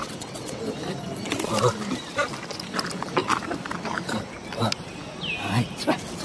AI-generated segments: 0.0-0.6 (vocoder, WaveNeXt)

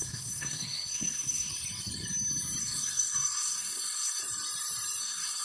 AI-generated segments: 0.0-1.5 (codec, SNAC); 2.6-4.2; 5.0-5.4

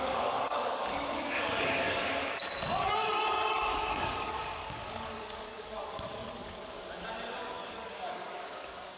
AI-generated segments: 0.0-6.8 (codec, DAC); 7.4-9.0

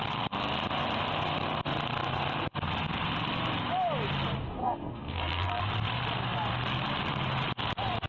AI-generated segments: 4.6-5.6 (codec, SNAC)

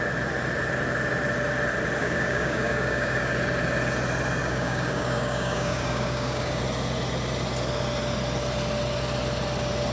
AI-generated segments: 2.0-3.3 (codec, DAC); 4.4-6.6

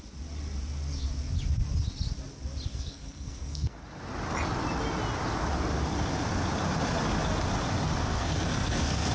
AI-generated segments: 2.7-3.8 (codec, SNAC); 8.0-9.1

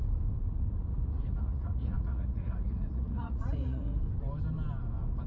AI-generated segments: 0.8-4.0 (vocoder, Vocos)